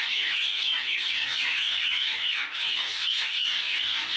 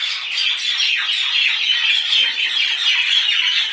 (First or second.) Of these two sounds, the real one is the second